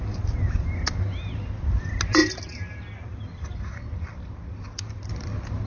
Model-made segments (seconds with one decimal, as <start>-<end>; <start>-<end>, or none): none